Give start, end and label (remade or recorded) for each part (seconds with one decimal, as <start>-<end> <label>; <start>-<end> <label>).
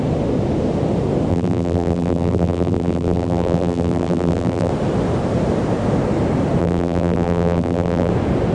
0.0-1.3 recorded; 1.3-4.7 remade; 4.7-6.6 recorded; 6.6-8.1 remade; 8.1-8.5 recorded